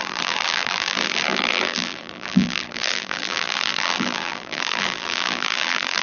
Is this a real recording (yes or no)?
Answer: no